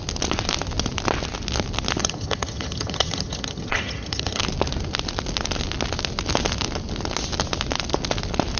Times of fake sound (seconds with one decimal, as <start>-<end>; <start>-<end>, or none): 2.0-4.4